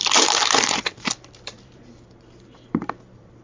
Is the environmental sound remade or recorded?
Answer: remade